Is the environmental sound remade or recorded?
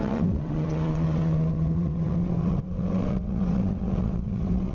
remade